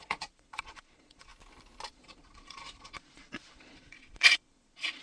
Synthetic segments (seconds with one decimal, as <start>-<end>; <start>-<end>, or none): 0.0-1.3; 1.9-5.0